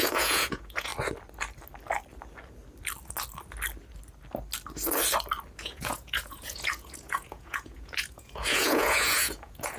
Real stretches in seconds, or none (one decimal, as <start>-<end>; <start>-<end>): 0.9-5.6